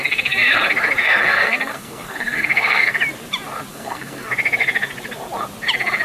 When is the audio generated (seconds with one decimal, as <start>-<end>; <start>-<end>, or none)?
0.0-0.6; 1.0-3.0; 3.7-4.3